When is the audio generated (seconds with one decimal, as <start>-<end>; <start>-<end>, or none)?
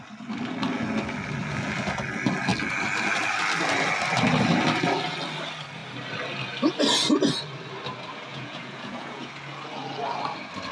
8.3-9.3